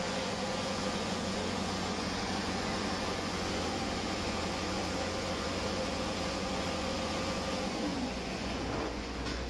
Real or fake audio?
fake